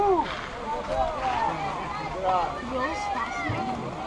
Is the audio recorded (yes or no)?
yes